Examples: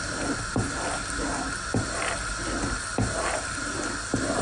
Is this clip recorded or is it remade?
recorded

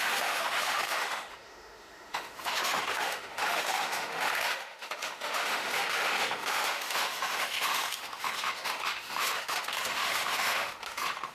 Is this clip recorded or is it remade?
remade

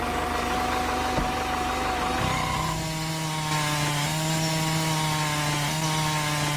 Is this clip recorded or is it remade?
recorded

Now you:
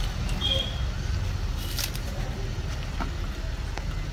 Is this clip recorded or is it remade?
recorded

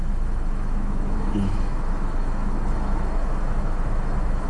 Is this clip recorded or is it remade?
remade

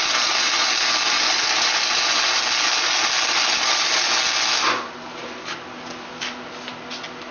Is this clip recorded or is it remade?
recorded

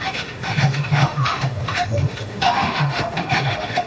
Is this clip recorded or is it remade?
remade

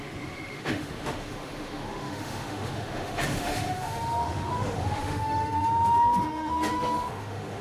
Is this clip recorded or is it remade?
remade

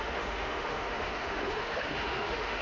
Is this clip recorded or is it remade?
remade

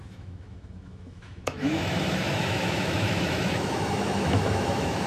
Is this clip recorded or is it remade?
remade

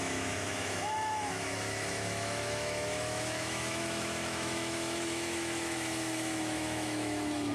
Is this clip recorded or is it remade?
remade